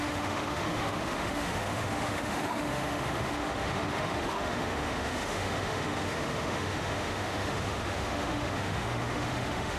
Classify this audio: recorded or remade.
remade